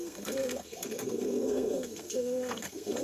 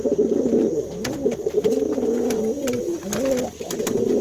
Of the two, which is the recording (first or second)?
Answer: second